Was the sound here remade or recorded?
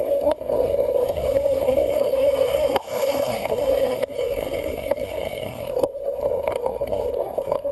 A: remade